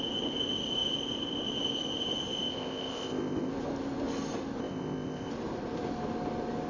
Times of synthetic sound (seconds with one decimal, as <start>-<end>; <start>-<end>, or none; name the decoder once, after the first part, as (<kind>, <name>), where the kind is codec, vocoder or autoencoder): 2.5-3.5 (codec, ZipCodec); 4.6-5.3